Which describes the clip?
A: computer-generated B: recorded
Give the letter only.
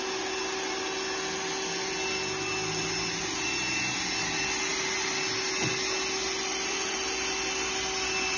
B